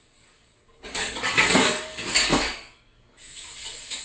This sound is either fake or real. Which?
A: fake